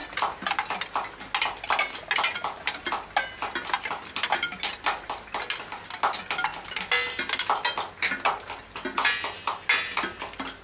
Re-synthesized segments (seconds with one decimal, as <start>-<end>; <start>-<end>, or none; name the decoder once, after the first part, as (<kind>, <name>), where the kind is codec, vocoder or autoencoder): none